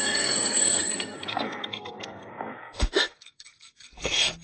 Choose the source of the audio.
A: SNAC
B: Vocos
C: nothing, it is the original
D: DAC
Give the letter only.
A